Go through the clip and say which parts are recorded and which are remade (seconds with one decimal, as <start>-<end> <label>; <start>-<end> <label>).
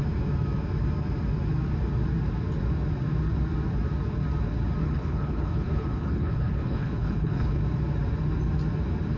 0.0-4.8 recorded; 4.8-7.6 remade; 7.6-9.2 recorded